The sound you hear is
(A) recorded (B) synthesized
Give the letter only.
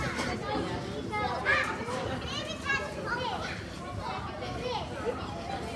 A